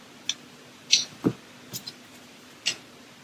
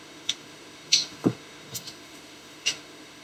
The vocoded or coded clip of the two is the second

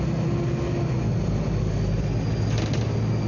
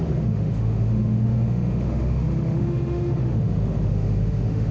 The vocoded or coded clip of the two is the second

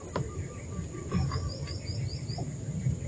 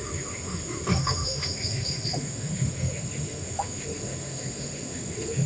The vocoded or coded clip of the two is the second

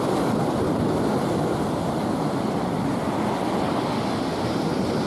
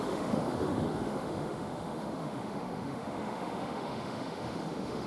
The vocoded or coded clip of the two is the second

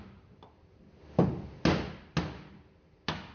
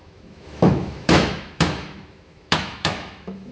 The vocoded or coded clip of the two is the second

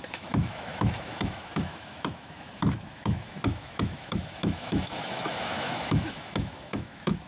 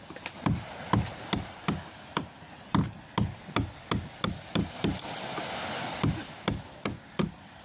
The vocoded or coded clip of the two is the first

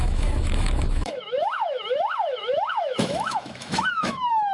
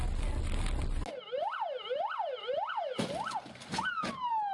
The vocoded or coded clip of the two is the first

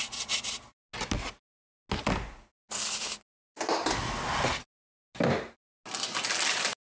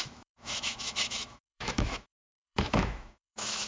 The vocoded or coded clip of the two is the second